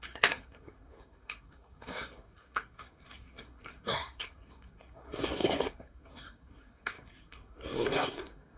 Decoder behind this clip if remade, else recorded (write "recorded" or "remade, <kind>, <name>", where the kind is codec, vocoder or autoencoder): remade, codec, SNAC